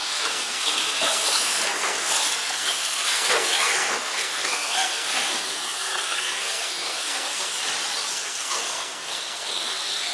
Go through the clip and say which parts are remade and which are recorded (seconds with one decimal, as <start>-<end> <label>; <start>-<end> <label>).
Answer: 0.0-7.5 remade; 7.5-8.1 recorded; 8.1-10.1 remade